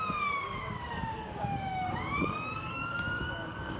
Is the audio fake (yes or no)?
yes